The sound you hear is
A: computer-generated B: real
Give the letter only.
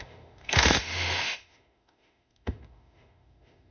A